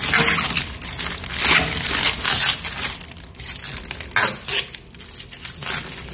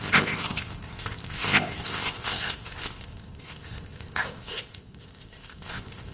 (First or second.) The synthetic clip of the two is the second